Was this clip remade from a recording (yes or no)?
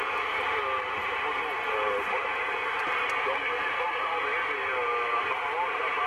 no